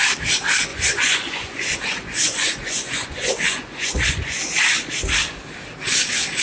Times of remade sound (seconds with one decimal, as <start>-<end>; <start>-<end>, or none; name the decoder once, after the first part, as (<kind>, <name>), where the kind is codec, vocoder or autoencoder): 0.7-4.4 (vocoder, Vocos)